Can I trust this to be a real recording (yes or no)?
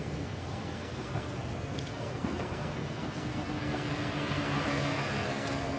no